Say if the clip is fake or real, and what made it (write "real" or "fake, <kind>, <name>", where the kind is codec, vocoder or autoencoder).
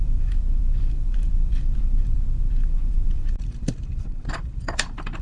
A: fake, vocoder, BigVGAN v2